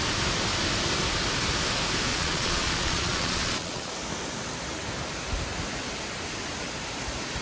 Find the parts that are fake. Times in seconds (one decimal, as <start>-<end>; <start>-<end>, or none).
2.1-3.9